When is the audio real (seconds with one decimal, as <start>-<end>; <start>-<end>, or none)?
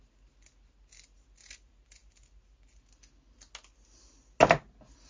0.0-5.1